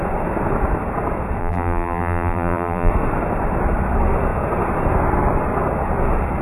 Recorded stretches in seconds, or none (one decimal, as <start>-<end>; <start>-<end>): 0.0-1.4; 2.9-6.4